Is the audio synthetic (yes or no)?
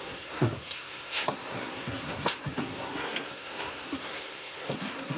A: yes